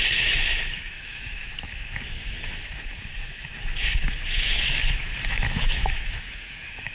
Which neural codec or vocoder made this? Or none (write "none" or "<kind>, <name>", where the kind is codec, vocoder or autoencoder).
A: autoencoder, DAC-VAE